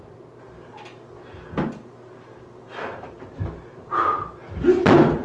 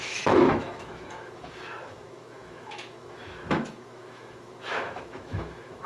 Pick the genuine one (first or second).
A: first